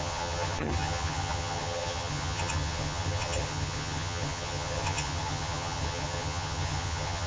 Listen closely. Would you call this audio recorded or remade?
remade